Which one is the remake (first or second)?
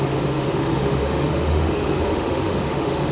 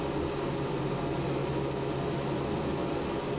first